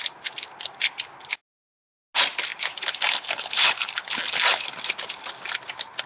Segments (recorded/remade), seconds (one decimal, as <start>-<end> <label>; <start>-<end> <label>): 0.0-6.1 recorded